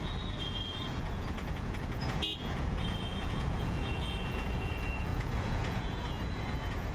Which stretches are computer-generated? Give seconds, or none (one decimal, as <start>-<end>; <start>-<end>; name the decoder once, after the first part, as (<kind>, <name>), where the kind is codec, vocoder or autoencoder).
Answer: 0.0-6.9 (vocoder, Vocos)